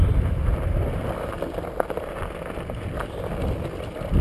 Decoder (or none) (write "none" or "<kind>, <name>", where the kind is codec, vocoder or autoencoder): none